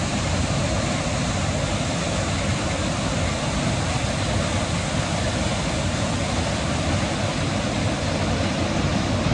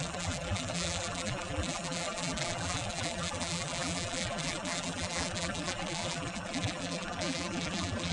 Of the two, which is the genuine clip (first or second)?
first